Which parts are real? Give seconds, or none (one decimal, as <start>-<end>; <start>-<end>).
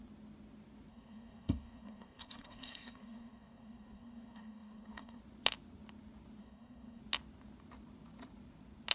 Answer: 0.0-0.9; 5.2-6.4; 7.0-8.9